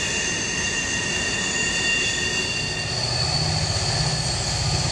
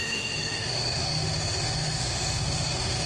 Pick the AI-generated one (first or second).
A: second